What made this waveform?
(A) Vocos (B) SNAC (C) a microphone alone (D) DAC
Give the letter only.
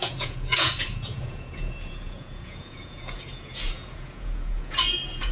A